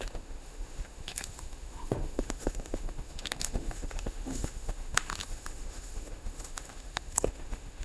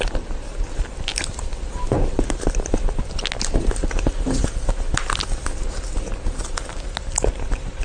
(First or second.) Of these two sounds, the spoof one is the first